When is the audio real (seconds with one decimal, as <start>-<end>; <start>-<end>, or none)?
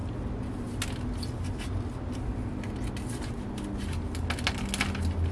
0.0-5.3